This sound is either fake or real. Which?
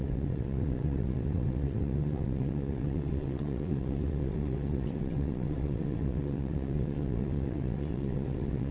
fake